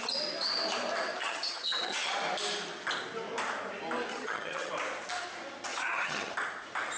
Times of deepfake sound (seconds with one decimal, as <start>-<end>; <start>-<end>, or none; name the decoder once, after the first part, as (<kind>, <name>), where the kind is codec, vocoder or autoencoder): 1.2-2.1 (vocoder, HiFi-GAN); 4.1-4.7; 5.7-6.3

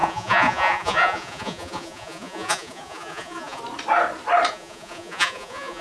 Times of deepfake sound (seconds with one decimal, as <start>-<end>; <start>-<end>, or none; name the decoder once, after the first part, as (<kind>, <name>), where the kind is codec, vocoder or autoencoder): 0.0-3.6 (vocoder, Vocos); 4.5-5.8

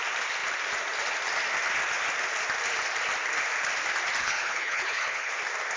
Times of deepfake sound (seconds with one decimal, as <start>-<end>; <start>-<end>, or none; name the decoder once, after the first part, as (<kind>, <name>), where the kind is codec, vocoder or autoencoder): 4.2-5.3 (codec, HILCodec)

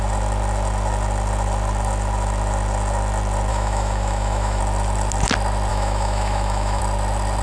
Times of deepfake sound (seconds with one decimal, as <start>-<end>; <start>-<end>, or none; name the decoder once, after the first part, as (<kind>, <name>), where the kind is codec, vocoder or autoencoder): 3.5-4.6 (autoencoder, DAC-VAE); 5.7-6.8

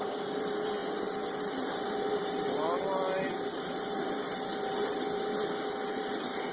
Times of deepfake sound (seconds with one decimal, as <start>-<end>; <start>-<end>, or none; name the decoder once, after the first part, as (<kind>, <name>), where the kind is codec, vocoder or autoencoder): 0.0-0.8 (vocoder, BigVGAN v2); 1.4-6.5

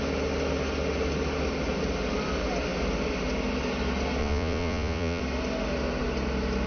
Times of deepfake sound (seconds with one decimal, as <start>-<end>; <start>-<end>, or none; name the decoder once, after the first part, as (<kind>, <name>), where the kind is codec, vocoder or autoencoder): 4.2-5.2 (vocoder, Vocos)